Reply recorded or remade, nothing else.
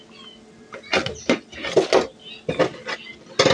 recorded